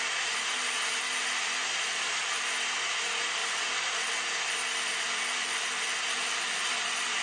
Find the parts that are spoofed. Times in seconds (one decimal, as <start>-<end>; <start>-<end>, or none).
none